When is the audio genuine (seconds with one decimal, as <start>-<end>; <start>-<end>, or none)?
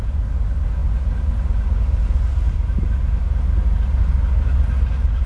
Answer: 0.0-5.3